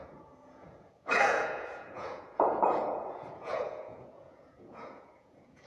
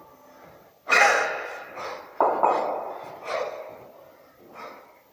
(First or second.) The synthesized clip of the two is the first